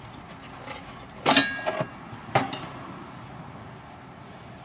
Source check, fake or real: real